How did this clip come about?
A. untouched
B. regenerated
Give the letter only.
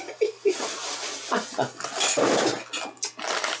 A